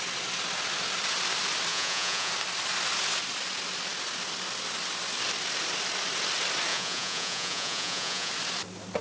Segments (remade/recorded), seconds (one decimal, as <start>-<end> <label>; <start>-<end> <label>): 0.0-1.7 recorded; 1.7-2.3 remade; 2.3-6.7 recorded; 6.7-8.3 remade; 8.3-9.0 recorded